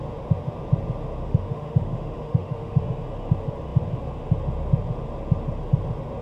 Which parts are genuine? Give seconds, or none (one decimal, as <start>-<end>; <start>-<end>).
0.0-1.2; 2.8-6.2